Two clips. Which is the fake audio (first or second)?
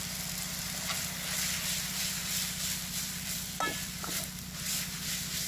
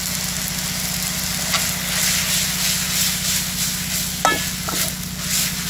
first